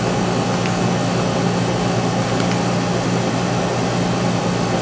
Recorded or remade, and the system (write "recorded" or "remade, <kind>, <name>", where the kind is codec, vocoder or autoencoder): recorded